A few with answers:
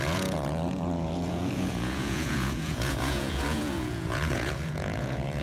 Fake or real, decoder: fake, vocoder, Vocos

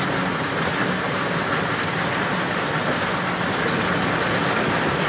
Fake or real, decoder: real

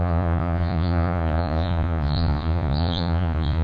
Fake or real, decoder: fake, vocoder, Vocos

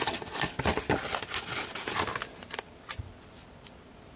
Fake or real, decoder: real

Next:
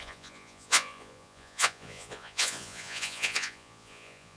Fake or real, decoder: fake, vocoder, Vocos